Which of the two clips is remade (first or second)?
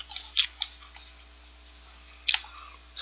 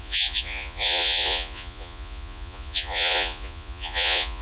second